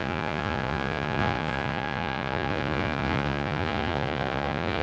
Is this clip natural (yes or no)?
no